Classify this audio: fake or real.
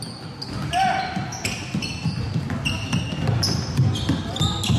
real